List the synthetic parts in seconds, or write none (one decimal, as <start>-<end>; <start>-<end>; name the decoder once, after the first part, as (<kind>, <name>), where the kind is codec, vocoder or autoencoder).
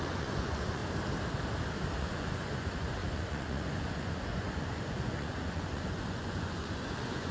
0.0-0.8 (vocoder, Vocos); 2.0-7.3